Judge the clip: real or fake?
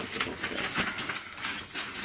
fake